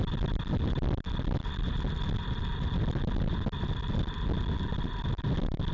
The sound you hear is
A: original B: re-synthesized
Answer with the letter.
A